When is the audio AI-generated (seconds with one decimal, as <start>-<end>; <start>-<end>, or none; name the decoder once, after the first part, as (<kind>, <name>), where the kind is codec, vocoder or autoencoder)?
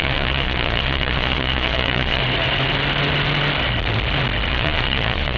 0.0-2.2 (vocoder, Vocos); 4.5-5.4